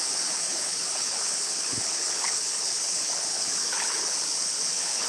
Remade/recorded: remade